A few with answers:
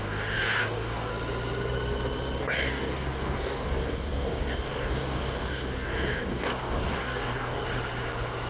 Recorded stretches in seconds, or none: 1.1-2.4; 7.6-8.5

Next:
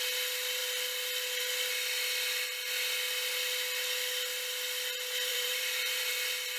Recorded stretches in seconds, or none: 0.0-5.3; 6.1-6.6

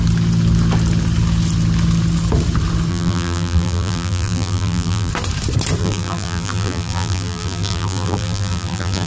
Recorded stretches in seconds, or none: 0.0-2.9; 5.1-5.8

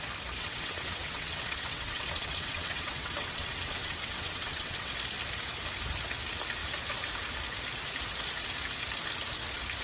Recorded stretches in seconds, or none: 0.0-0.4; 4.9-9.8

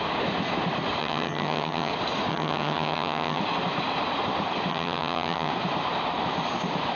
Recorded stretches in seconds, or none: 0.0-1.0; 1.9-2.3; 3.4-4.7; 5.5-7.0

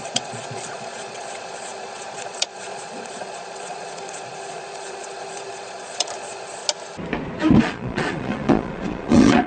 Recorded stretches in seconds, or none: 6.6-7.6

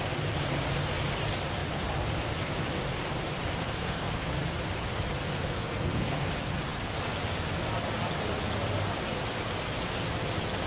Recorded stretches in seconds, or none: 0.0-3.6; 4.3-5.4; 6.3-10.7